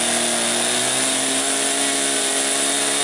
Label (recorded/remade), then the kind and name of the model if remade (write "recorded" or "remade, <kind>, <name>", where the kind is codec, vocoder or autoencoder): recorded